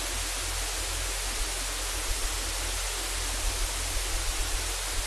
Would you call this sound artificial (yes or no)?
no